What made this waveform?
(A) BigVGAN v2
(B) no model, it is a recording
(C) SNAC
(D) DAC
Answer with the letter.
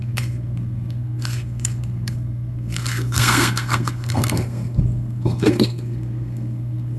C